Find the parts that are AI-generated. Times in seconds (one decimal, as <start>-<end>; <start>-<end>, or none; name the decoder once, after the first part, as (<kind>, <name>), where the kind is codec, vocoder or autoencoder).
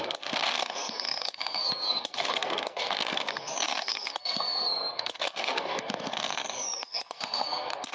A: 0.0-7.9 (codec, SNAC)